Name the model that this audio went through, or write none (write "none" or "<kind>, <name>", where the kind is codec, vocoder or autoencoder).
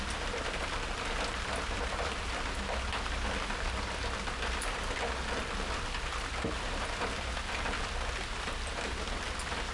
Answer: none